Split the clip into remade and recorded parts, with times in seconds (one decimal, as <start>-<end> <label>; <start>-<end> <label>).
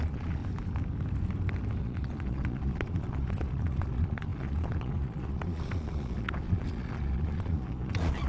0.0-0.4 remade; 0.4-1.8 recorded; 1.8-8.3 remade